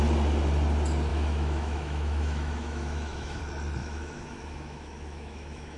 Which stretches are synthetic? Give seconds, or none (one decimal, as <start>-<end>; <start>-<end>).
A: 1.1-3.4; 3.8-5.8